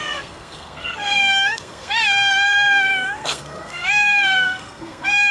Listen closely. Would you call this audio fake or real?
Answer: fake